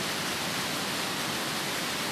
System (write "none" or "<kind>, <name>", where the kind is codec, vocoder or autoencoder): none